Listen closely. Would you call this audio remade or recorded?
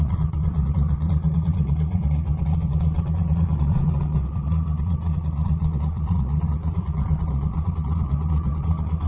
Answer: remade